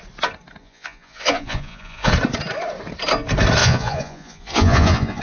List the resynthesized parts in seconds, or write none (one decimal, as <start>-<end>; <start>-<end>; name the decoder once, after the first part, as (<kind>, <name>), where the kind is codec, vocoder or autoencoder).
0.6-2.1 (vocoder, Vocos); 3.6-5.2